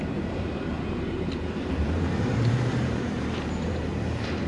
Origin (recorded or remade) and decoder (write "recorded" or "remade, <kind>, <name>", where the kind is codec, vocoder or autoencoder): remade, vocoder, BigVGAN v2